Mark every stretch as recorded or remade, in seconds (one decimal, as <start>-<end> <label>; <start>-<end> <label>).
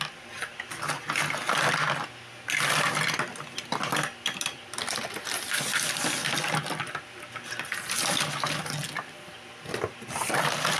0.0-10.8 recorded